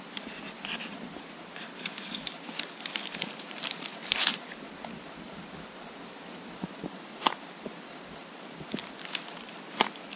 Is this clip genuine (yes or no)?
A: no